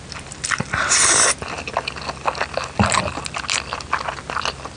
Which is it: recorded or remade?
recorded